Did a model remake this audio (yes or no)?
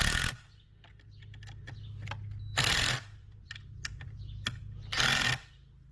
no